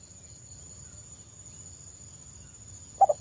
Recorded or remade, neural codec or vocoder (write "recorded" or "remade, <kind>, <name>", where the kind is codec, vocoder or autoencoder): recorded